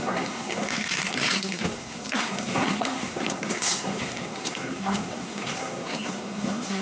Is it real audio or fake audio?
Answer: fake